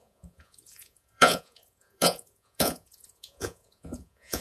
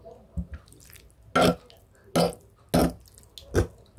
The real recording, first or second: second